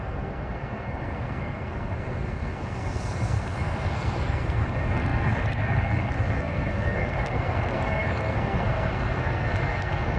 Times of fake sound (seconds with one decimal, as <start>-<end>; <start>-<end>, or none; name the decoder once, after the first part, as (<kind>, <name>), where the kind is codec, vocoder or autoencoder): 0.0-10.2 (codec, SNAC)